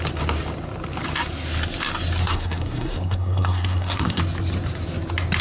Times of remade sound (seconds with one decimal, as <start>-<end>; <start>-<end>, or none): 2.2-4.2